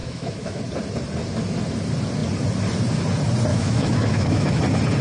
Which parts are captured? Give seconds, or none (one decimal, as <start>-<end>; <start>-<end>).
0.6-3.5; 4.6-5.0